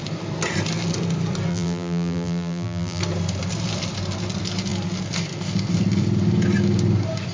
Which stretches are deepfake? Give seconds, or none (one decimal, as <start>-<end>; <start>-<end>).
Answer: 1.5-3.0